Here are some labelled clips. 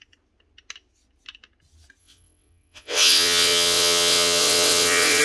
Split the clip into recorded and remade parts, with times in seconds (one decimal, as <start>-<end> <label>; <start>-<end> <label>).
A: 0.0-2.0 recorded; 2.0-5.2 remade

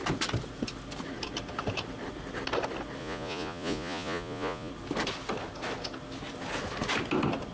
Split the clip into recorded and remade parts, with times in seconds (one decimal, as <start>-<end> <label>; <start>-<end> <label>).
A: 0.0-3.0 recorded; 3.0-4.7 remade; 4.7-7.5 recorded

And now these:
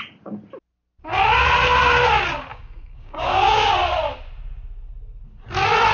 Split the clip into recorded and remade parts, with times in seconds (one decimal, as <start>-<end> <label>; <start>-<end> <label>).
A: 0.0-2.5 recorded; 2.5-3.7 remade; 3.7-5.9 recorded

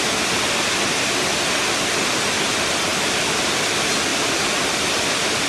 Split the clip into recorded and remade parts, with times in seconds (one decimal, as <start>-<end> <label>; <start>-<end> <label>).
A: 0.0-2.9 recorded; 2.9-3.5 remade; 3.5-4.1 recorded; 4.1-5.5 remade

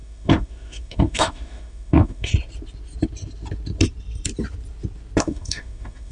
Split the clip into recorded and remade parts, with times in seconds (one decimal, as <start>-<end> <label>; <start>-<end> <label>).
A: 0.0-2.3 remade; 2.3-5.2 recorded; 5.2-6.1 remade

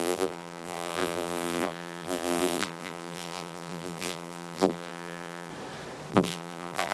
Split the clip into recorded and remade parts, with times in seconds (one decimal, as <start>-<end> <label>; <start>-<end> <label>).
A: 0.0-5.5 remade; 5.5-6.1 recorded; 6.1-6.9 remade

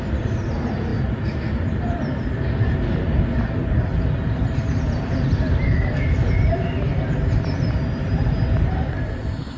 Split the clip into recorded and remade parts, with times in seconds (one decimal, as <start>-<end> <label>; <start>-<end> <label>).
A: 0.0-9.6 recorded

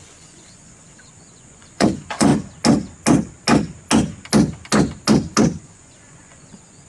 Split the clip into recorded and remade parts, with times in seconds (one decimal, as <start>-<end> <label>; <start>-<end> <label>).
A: 0.0-2.3 remade; 2.3-5.6 recorded; 5.6-6.9 remade